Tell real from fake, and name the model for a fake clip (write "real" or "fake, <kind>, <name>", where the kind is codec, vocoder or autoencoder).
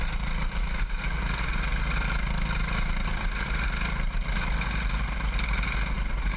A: real